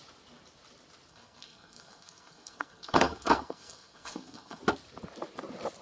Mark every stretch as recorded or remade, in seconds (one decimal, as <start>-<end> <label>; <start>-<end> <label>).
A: 0.0-1.1 recorded; 1.1-4.6 remade; 4.6-5.8 recorded